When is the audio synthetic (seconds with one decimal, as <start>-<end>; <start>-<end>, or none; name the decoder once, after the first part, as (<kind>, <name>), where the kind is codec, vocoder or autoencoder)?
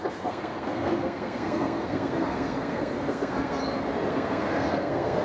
0.0-3.6 (codec, SNAC); 4.1-5.2